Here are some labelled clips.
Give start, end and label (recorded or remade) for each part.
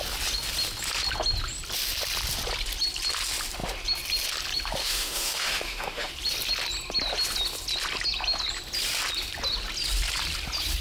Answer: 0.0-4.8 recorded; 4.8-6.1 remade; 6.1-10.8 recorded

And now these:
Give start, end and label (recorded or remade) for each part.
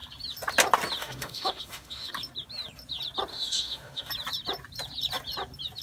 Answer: 0.0-1.0 recorded; 1.0-2.1 remade; 2.1-3.3 recorded; 3.3-4.1 remade; 4.1-5.8 recorded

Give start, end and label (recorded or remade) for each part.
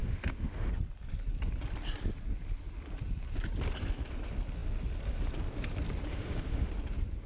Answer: 0.0-0.7 remade; 0.7-6.1 recorded; 6.1-6.7 remade; 6.7-7.3 recorded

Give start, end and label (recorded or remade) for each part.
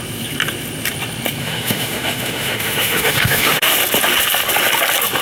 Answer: 0.0-1.4 recorded; 1.4-3.7 remade; 3.7-5.2 recorded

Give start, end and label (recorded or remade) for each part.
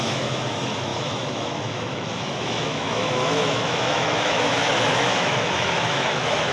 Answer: 0.0-6.5 remade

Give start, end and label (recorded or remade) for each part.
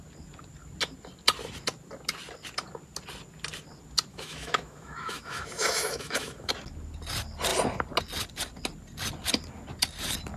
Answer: 0.0-4.1 recorded; 4.1-6.5 remade; 6.5-10.4 recorded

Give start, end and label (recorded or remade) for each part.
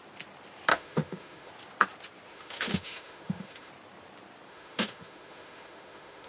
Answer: 0.0-0.7 recorded; 0.7-1.5 remade; 1.5-2.3 recorded; 2.3-3.7 remade; 3.7-4.5 recorded; 4.5-6.3 remade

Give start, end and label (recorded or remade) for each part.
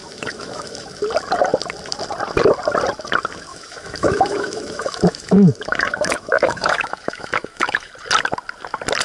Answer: 0.0-1.0 remade; 1.0-3.5 recorded; 3.5-7.9 remade; 7.9-9.0 recorded